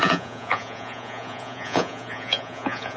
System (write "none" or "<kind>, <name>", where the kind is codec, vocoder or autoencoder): vocoder, Vocos